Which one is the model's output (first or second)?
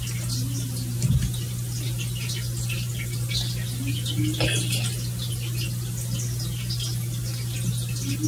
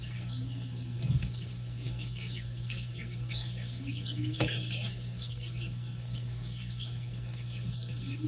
second